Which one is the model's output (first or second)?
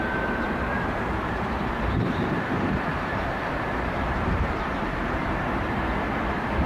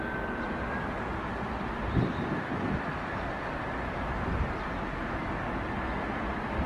first